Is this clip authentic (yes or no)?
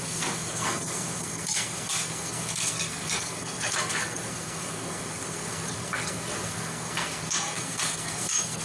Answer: no